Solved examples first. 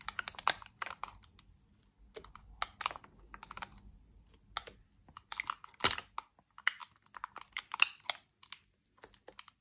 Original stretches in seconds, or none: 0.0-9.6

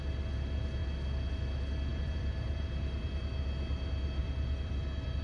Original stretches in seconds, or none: 0.0-1.9; 3.1-4.2